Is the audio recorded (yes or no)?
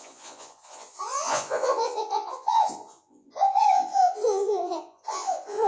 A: no